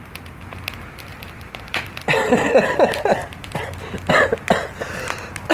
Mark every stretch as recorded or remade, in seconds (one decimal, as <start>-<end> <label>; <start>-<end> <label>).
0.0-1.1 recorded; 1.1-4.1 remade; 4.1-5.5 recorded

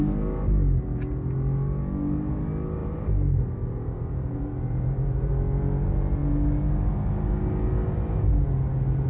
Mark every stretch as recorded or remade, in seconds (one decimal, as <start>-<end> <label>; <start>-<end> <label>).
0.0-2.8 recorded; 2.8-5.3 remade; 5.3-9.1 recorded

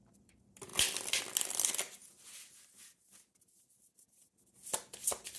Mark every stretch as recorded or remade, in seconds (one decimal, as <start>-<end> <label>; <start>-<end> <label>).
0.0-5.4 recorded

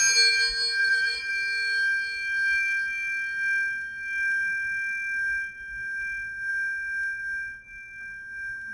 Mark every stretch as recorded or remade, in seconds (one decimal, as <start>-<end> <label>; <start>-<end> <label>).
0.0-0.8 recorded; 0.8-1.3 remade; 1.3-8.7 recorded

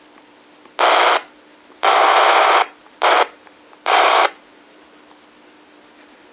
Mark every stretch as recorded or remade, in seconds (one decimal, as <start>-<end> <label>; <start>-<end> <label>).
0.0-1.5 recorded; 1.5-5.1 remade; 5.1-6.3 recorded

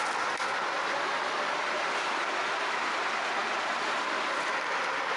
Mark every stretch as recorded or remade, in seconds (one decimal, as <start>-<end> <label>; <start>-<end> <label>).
0.0-5.2 recorded

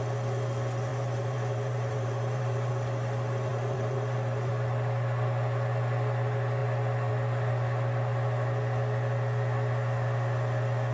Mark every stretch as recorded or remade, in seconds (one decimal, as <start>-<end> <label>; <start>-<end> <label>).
0.0-0.9 recorded; 0.9-2.7 remade; 2.7-3.5 recorded; 3.5-4.5 remade; 4.5-10.9 recorded